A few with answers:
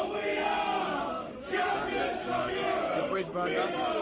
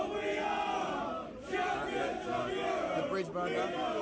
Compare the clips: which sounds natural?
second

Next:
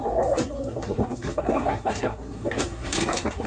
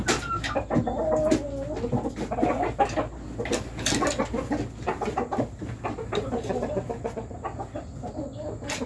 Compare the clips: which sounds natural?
second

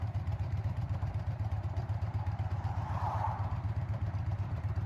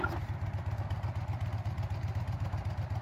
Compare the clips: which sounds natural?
second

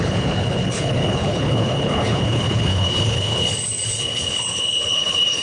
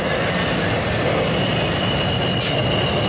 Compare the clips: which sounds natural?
second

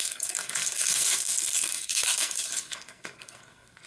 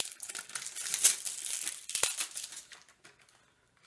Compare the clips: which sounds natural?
second